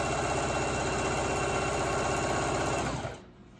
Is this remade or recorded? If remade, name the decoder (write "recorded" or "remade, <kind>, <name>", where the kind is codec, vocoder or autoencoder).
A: recorded